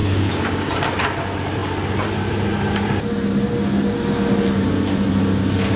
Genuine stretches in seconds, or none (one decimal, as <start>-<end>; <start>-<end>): 0.7-5.8